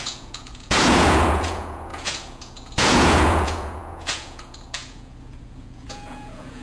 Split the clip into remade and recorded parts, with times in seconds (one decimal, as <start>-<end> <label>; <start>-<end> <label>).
0.0-6.6 remade